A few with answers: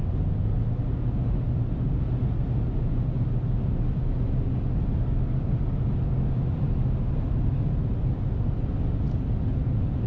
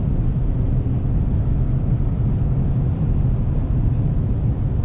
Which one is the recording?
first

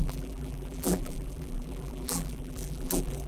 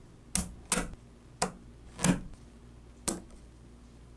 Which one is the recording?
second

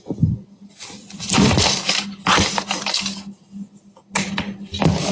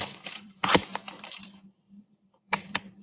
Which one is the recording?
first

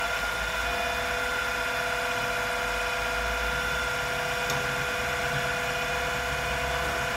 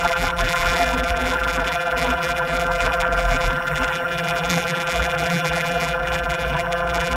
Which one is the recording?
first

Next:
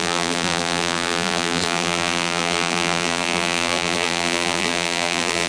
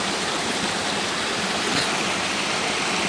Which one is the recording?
second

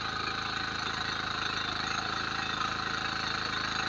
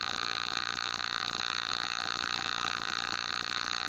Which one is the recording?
first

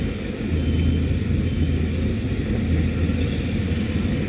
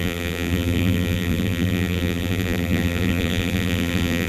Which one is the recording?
first